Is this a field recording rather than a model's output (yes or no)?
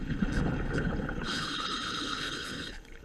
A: no